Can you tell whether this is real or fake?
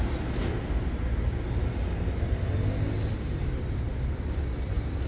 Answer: real